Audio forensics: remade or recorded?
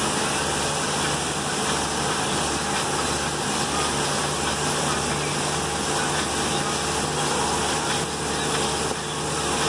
recorded